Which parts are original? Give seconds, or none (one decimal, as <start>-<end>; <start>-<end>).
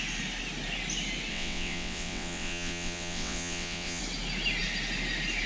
0.0-1.3; 4.0-5.5